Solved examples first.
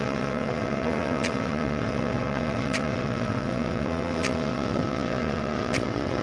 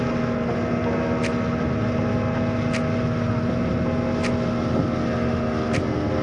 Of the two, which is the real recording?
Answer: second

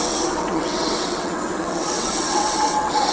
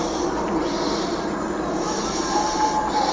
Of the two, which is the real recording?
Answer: second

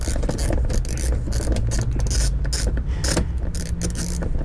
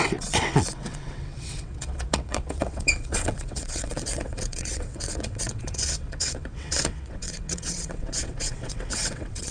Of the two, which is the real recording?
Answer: first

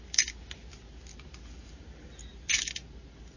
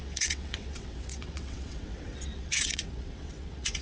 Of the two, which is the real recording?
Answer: first